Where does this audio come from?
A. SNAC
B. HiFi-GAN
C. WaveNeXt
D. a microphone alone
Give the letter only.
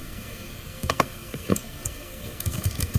A